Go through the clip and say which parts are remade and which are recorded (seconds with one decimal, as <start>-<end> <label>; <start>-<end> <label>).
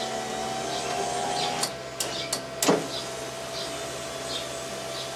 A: 0.0-5.2 recorded